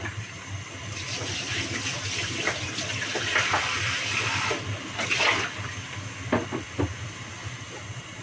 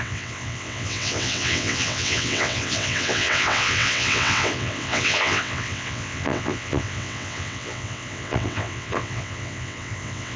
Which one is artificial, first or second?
second